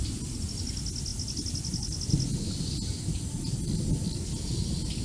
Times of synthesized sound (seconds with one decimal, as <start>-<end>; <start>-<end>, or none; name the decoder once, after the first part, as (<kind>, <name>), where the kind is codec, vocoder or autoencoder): none